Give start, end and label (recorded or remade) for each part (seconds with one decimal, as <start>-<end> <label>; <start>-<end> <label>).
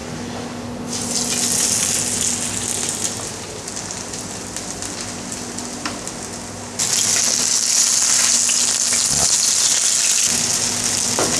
0.0-11.4 recorded